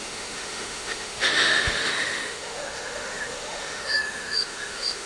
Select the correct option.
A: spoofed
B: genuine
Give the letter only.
A